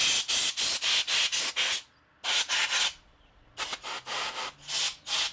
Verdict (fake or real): real